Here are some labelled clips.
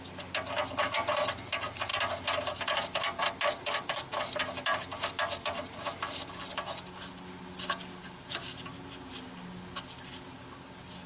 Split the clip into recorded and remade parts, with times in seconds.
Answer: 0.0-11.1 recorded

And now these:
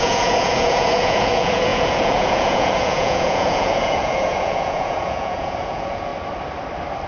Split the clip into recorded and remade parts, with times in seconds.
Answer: 0.0-6.1 remade; 6.1-7.1 recorded

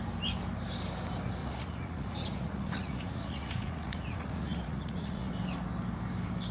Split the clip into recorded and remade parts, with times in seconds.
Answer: 0.0-1.4 recorded; 1.4-5.3 remade; 5.3-6.5 recorded

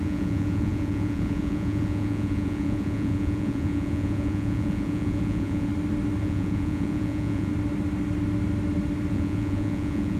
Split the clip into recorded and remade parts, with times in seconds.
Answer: 0.0-5.7 remade; 5.7-6.2 recorded; 6.2-7.5 remade; 7.5-9.1 recorded; 9.1-10.2 remade

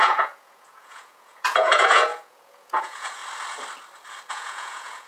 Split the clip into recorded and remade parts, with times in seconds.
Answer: 0.0-3.2 remade; 3.2-4.3 recorded; 4.3-5.1 remade